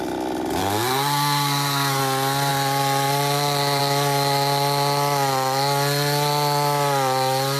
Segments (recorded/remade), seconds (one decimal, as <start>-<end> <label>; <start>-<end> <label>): 0.0-0.6 recorded; 0.6-2.0 remade; 2.0-7.6 recorded